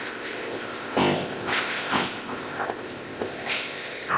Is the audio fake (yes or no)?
yes